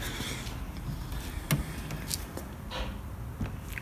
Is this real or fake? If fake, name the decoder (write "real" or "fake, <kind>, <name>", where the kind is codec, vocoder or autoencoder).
real